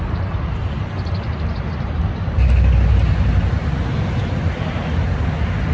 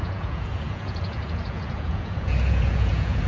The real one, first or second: first